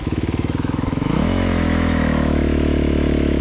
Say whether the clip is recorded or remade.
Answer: remade